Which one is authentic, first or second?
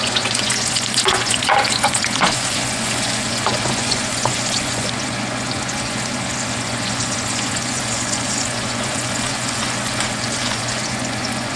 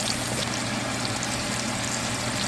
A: second